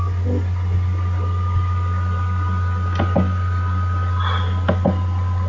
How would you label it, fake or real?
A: real